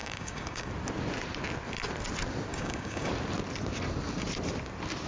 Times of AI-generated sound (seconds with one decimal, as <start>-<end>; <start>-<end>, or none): 0.0-0.7; 2.5-3.1